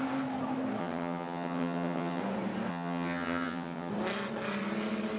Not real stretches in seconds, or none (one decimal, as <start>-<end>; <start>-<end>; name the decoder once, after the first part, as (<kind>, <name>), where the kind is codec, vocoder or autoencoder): 0.8-2.2 (vocoder, HiFi-GAN); 2.7-3.9

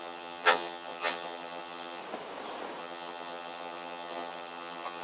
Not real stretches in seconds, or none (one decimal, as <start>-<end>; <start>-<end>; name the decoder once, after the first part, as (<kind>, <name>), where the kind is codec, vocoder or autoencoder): 0.0-2.0 (vocoder, HiFi-GAN); 2.8-5.0

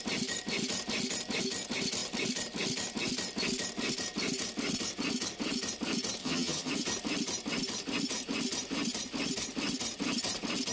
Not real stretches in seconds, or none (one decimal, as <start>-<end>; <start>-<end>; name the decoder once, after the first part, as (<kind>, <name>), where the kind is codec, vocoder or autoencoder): 6.2-6.7 (vocoder, HiFi-GAN)

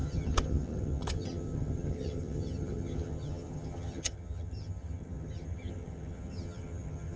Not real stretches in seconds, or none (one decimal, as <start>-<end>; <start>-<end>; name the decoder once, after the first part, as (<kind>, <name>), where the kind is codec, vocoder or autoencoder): 0.0-7.2 (vocoder, HiFi-GAN)

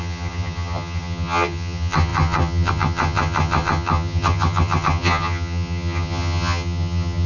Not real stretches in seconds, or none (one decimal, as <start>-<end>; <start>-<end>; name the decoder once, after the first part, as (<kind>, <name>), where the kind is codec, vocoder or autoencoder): 0.0-7.3 (vocoder, HiFi-GAN)

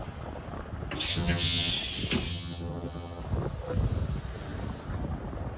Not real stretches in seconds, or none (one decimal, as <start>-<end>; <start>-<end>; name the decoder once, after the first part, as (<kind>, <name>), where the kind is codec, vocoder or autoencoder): 1.1-1.7 (vocoder, HiFi-GAN); 2.3-3.2

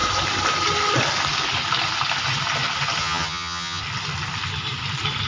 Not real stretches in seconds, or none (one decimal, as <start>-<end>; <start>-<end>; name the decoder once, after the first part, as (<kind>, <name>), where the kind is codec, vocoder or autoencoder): 3.0-3.8 (vocoder, HiFi-GAN)

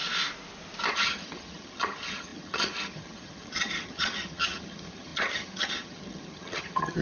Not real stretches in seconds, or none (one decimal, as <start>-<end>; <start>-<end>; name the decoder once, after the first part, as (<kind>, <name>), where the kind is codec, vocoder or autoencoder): 0.9-7.0 (vocoder, HiFi-GAN)